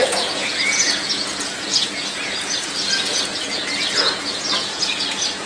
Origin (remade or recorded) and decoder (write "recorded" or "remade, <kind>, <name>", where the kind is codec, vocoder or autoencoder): remade, vocoder, Vocos